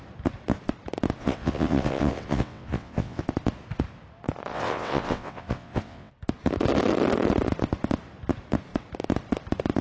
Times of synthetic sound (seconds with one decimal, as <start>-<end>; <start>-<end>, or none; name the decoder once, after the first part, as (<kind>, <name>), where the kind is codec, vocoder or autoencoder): 1.2-3.2 (vocoder, WaveNeXt); 4.5-6.1